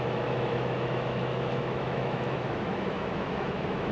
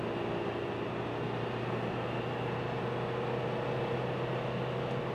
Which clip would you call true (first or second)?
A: second